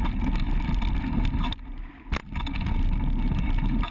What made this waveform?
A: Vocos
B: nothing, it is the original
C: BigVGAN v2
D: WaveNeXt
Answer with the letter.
B